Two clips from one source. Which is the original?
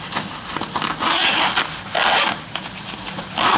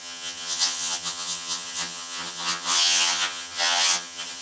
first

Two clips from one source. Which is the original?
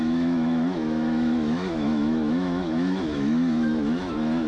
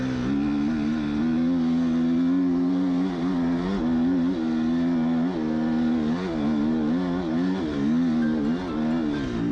second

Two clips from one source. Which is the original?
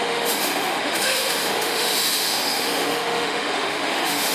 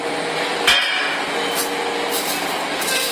second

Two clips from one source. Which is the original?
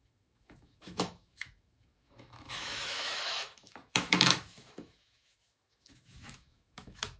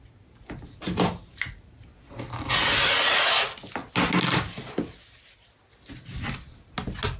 second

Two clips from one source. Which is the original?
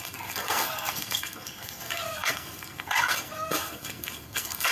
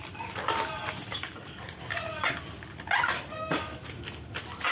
second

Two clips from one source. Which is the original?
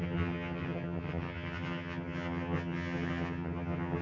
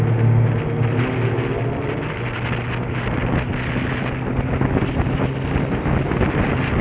second